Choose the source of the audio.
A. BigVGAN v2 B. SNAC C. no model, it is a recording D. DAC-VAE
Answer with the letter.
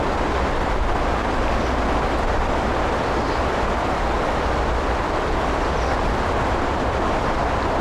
A